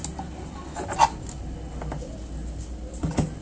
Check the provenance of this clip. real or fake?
real